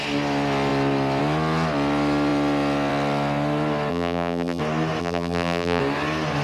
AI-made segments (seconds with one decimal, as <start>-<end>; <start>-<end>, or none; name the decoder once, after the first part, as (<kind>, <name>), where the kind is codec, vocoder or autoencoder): 3.9-4.6 (vocoder, BigVGAN v2); 5.0-5.8